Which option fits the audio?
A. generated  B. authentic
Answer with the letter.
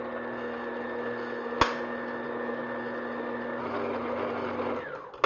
B